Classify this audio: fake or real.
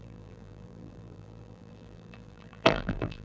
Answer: fake